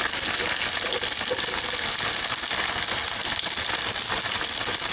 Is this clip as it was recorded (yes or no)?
yes